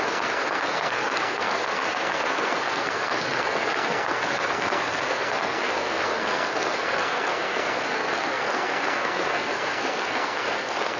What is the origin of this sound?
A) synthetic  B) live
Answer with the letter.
A